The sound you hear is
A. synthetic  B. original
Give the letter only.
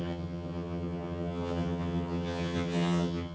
A